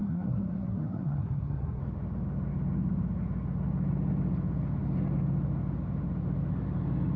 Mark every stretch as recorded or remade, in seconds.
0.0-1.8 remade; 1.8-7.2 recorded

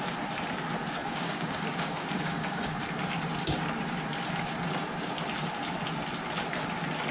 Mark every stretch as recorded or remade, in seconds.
0.0-1.0 recorded; 1.0-2.8 remade; 2.8-7.1 recorded

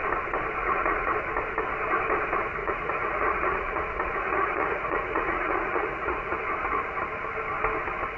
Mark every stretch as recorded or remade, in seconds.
0.0-0.6 recorded; 0.6-1.1 remade; 1.1-2.6 recorded; 2.6-6.4 remade; 6.4-8.2 recorded

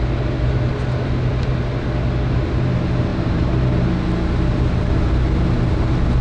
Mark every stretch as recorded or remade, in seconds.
0.0-3.1 recorded; 3.1-3.7 remade; 3.7-6.2 recorded

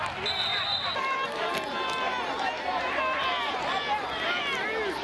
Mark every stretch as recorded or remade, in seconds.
0.0-5.0 recorded